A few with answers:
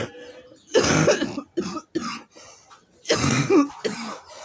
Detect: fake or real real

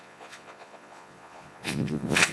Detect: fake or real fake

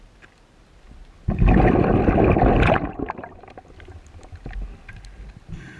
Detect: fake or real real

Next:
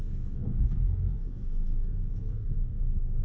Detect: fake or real fake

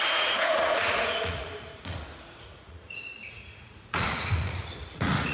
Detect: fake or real fake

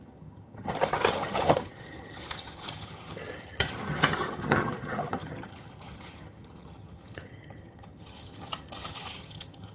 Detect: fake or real fake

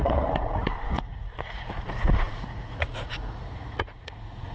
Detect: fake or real fake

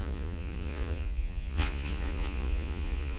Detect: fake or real fake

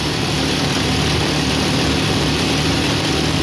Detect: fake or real fake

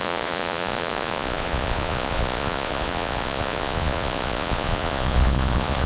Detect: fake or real fake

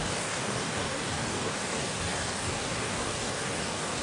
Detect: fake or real fake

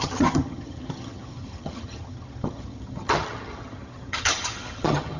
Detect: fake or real fake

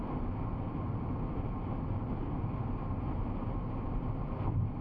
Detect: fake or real real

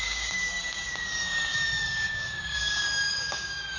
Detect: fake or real fake